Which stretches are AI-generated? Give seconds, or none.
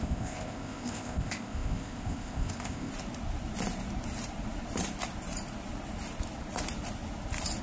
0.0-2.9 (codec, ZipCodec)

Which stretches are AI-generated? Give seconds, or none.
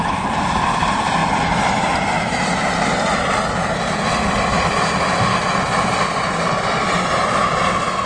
0.0-1.2 (vocoder, BigVGAN v2); 5.8-8.1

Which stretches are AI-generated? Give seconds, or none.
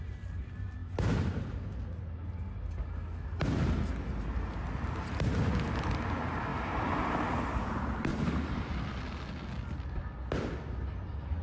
6.5-7.1 (vocoder, BigVGAN v2); 8.1-8.7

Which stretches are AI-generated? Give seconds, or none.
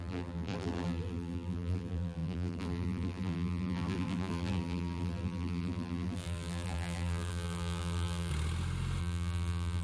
0.0-8.3 (vocoder, BigVGAN v2); 9.0-9.8